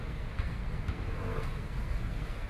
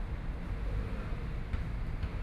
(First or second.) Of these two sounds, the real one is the second